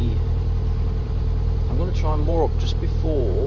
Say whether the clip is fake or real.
fake